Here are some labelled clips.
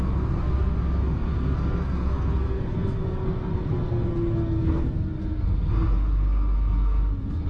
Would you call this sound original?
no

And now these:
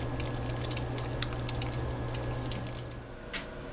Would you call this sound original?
yes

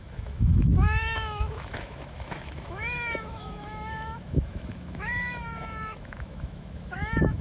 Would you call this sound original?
no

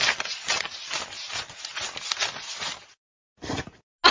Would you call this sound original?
yes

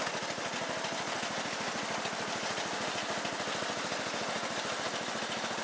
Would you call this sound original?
yes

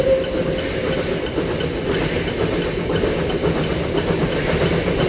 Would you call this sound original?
yes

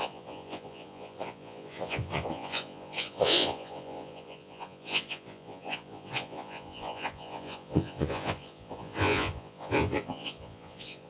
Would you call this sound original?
no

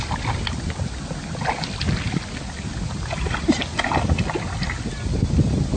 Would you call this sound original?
yes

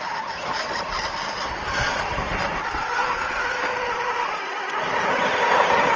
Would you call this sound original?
yes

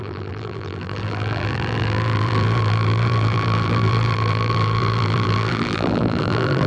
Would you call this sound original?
no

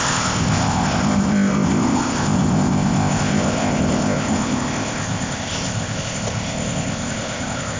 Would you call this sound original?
no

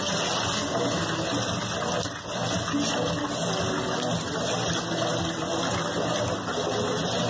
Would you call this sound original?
yes